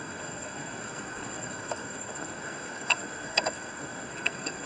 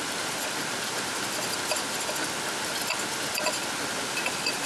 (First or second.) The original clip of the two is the second